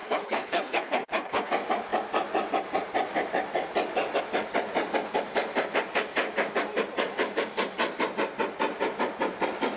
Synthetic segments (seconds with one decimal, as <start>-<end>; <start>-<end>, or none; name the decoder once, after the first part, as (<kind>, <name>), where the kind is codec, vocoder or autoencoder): 0.0-1.5 (codec, HILCodec)